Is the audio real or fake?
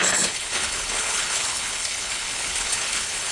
fake